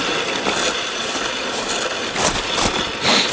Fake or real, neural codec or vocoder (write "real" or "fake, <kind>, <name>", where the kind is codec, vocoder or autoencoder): real